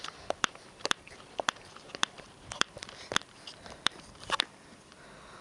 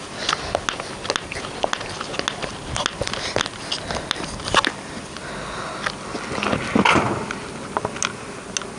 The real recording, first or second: second